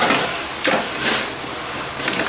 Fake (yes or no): no